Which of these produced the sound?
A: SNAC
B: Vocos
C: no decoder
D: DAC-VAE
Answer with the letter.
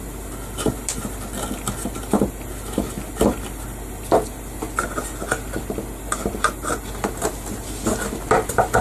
C